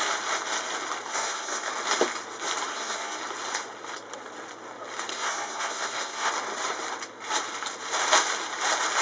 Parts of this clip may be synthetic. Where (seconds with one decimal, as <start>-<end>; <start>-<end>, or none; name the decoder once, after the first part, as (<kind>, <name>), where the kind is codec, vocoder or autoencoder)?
1.1-1.7 (codec, SNAC); 2.7-3.2; 5.1-6.3